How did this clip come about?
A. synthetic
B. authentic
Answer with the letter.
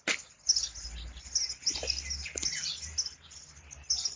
B